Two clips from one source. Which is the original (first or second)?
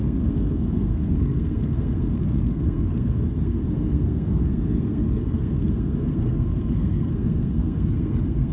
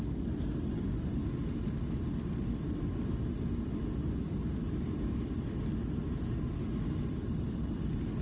second